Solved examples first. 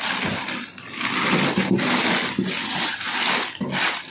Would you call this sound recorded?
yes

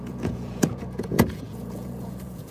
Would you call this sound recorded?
no